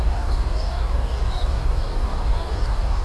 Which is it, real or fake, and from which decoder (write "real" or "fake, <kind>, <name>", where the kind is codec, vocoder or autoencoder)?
fake, codec, DAC